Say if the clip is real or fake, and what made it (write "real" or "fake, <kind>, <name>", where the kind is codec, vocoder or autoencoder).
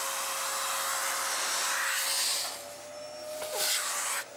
real